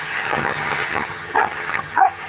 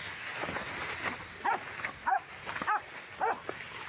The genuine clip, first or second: second